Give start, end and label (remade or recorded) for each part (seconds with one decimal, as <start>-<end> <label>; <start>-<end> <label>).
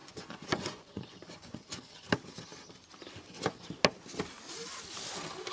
0.0-2.1 remade; 2.1-5.5 recorded